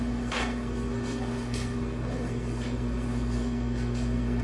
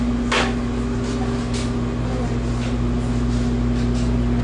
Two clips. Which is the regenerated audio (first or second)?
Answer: first